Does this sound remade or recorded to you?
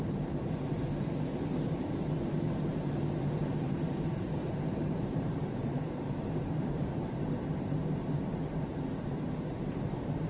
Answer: remade